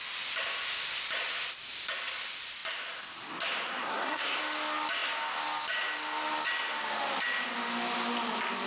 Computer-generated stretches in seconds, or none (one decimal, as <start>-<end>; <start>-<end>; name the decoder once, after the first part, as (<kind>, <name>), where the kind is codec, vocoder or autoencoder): 3.8-4.4 (codec, SNAC)